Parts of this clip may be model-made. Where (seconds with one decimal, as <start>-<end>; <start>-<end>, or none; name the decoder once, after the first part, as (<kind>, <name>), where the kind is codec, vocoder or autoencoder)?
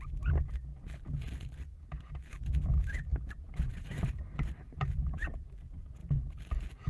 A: 3.1-5.1 (vocoder, BigVGAN v2)